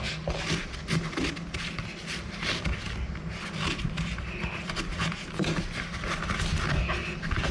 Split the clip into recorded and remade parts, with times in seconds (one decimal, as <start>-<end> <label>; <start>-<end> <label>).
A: 0.0-7.5 recorded